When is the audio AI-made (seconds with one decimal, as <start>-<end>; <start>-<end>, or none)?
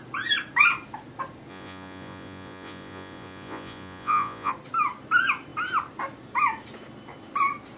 1.5-4.5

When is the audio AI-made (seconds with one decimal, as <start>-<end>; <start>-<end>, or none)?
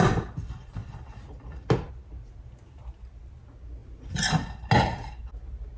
none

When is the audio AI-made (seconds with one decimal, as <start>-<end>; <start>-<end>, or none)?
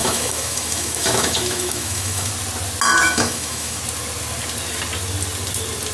0.0-2.3; 3.0-3.8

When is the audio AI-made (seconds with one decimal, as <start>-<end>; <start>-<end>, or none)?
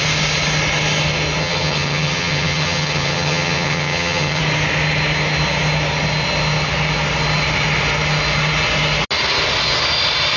1.4-4.4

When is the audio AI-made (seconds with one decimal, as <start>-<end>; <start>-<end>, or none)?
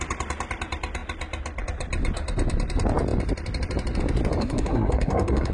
4.4-5.5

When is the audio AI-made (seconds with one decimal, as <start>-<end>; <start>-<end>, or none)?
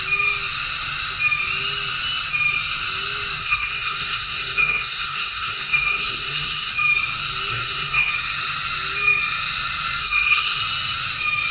3.4-6.7; 7.5-8.1; 10.0-10.6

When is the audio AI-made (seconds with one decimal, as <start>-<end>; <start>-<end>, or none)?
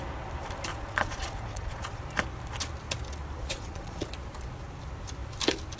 0.7-2.0; 3.4-4.1